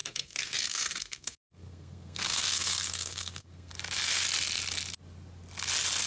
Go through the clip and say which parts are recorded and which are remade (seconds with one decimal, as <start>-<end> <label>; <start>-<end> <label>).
0.0-3.7 remade; 3.7-6.1 recorded